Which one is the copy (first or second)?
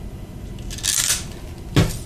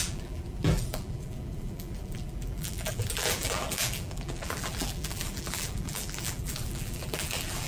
second